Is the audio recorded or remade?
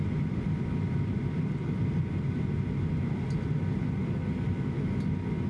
recorded